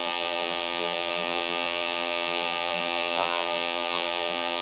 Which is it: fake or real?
fake